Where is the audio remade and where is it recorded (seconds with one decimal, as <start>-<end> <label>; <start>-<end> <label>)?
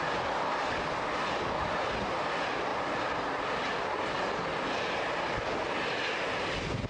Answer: 0.0-6.9 recorded